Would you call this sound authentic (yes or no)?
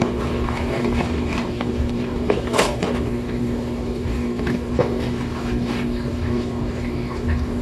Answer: no